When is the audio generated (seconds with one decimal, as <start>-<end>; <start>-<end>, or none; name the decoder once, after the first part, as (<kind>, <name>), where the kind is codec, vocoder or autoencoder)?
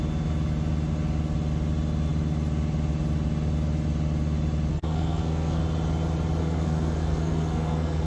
4.7-5.6 (codec, SNAC); 6.4-8.1